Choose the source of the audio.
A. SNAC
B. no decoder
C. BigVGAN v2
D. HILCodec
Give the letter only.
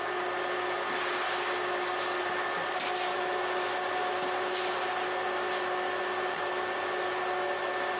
B